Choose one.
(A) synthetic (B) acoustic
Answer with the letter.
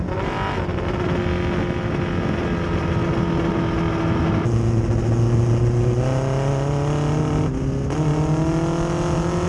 B